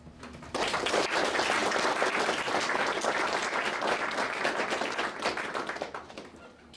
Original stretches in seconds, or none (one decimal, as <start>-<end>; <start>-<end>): 0.0-6.8

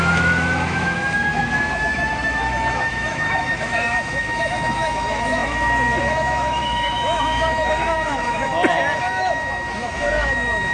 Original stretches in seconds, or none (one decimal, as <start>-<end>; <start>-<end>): 8.5-9.0

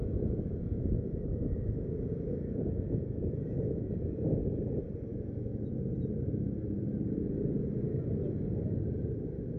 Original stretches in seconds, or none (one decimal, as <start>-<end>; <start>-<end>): 4.2-5.1; 5.7-9.6

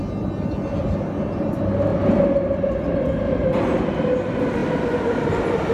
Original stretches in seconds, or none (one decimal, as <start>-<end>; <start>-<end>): 0.0-5.7